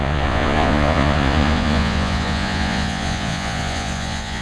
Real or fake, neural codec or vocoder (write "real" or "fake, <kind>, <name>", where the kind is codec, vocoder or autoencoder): fake, vocoder, Vocos